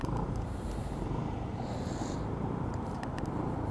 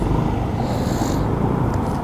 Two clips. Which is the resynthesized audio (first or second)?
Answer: first